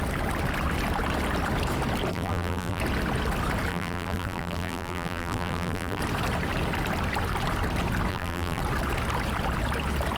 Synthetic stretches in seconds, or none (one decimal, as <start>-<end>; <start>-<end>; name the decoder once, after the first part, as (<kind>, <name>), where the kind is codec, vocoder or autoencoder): 2.1-2.8 (vocoder, BigVGAN v2); 3.7-6.0; 8.1-8.6

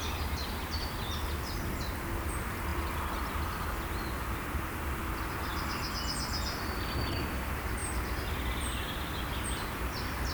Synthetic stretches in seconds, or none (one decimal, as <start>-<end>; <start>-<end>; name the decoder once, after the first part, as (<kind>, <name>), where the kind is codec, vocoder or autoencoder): 0.0-5.5 (vocoder, BigVGAN v2); 6.1-7.8; 8.6-10.3

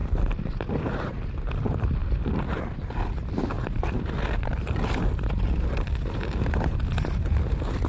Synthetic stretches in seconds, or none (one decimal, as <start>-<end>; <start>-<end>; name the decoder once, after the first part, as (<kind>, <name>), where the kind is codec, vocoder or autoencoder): 0.0-1.5 (vocoder, BigVGAN v2); 2.0-3.0

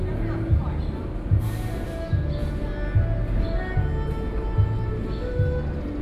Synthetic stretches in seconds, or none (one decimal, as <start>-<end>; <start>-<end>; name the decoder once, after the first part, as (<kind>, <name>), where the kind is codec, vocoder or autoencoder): none

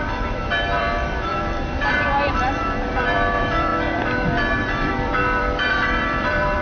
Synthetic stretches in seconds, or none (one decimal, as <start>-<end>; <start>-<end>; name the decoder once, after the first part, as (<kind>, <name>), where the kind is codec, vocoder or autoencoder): 0.0-6.6 (vocoder, BigVGAN v2)

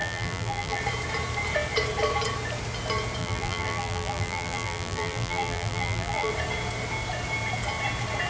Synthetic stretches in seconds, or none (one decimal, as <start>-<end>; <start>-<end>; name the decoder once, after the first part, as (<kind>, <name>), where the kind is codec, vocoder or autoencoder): 0.0-0.8 (vocoder, BigVGAN v2); 3.2-6.3

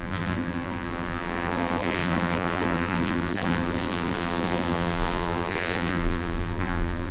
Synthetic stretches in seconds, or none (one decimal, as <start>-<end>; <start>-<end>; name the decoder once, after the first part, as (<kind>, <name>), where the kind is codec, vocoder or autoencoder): 0.0-7.1 (vocoder, BigVGAN v2)

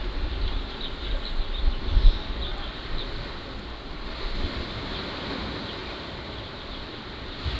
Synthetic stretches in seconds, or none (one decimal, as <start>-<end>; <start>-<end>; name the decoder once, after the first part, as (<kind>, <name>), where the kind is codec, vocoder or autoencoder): 5.8-7.6 (vocoder, BigVGAN v2)